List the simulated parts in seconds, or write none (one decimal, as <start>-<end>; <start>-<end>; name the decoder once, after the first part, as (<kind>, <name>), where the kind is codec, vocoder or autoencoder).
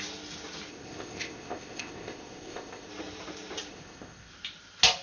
0.7-2.9 (codec, ZipCodec); 3.7-4.3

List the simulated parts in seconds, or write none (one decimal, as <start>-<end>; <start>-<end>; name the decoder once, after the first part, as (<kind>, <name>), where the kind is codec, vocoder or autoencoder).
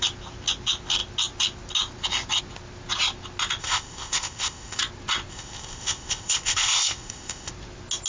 3.6-4.8 (codec, ZipCodec); 5.3-7.5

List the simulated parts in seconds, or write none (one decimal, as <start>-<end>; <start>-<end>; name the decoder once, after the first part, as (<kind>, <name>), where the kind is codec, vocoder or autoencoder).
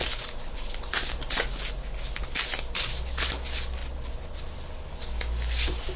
none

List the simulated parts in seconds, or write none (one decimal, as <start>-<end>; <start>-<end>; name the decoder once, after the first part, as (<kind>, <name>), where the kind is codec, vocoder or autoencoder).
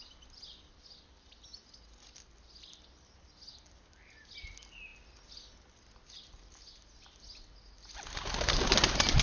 none